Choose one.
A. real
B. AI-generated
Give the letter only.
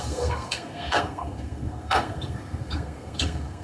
B